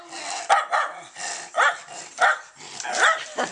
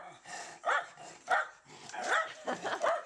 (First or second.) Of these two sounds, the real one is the first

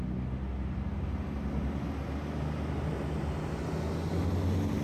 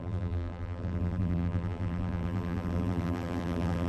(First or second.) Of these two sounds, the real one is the first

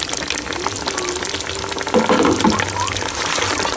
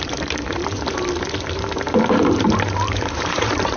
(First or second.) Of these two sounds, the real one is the first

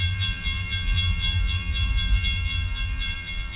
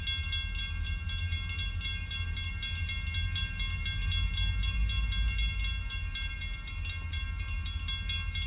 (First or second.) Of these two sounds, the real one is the second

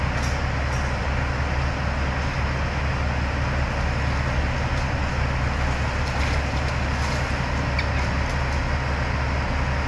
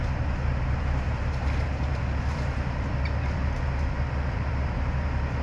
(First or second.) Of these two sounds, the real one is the first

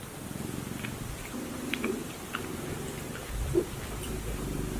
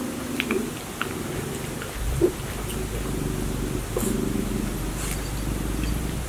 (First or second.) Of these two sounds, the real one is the second